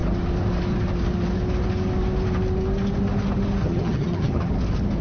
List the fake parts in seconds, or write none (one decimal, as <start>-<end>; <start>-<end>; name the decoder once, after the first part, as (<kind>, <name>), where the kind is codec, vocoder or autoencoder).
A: 3.6-4.5 (vocoder, HiFi-GAN)